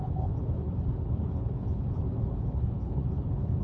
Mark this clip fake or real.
fake